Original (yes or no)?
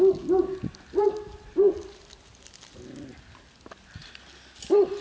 yes